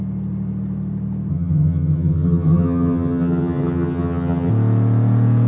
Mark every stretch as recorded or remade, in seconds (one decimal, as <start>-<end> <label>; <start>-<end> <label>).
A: 0.0-1.3 recorded; 1.3-4.5 remade; 4.5-5.5 recorded